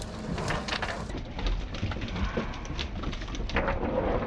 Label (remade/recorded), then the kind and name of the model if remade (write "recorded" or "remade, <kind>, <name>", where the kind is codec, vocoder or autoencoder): recorded